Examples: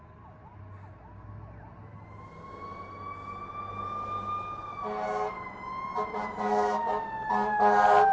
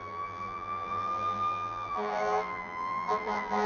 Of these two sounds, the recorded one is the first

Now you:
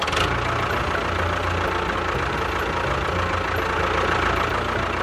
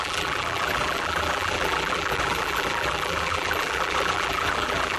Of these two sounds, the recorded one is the first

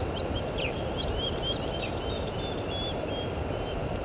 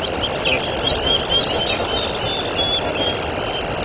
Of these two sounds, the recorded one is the second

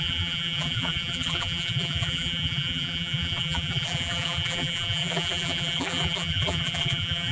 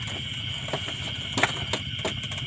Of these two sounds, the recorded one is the second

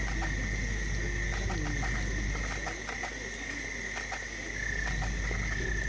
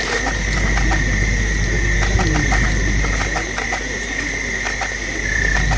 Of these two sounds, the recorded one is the first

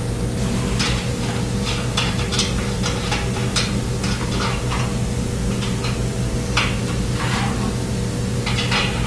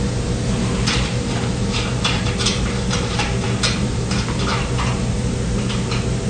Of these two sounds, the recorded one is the first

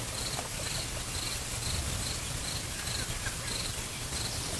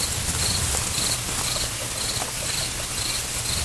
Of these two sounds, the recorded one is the second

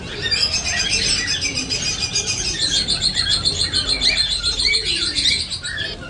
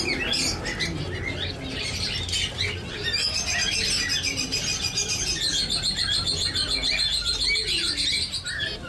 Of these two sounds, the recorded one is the second